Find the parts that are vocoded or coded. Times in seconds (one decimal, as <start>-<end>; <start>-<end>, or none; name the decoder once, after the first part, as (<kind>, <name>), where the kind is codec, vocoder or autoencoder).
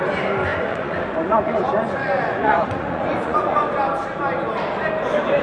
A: 0.5-3.7 (vocoder, Vocos)